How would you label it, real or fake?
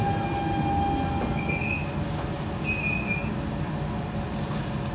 real